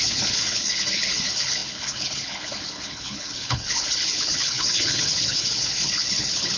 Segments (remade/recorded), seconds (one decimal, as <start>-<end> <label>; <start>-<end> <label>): 0.0-6.6 remade